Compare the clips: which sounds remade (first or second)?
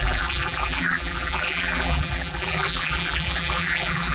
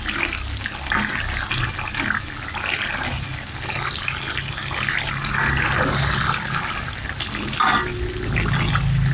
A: first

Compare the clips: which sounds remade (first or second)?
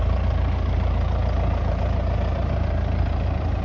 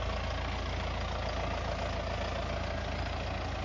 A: first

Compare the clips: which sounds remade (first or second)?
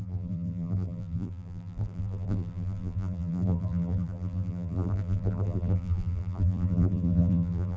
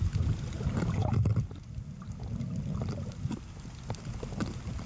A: first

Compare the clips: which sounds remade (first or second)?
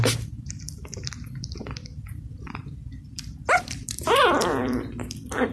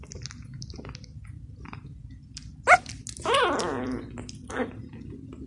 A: first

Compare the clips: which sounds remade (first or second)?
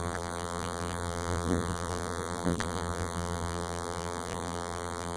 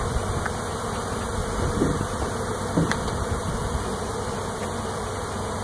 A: first